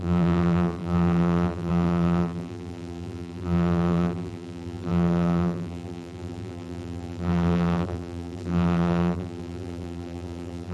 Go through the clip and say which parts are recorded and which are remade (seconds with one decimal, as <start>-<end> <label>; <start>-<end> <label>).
0.0-10.7 remade